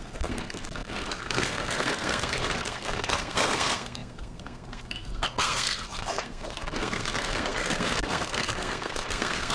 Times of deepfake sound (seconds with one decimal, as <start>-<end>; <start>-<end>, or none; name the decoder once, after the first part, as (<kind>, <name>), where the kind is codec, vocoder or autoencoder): 0.0-9.5 (codec, SNAC)